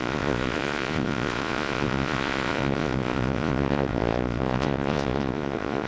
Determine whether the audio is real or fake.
fake